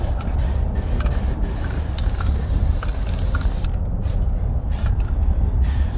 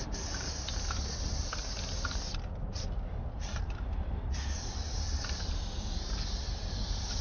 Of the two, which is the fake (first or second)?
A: first